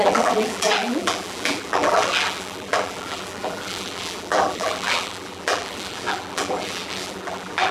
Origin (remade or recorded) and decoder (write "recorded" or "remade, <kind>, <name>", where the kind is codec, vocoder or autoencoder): remade, vocoder, BigVGAN v2